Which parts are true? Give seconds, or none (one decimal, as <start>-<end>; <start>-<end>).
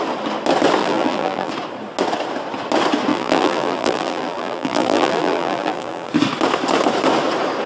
0.0-0.8; 1.5-3.1; 6.1-7.7